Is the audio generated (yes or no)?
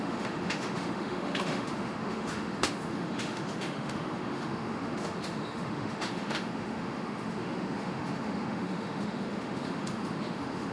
yes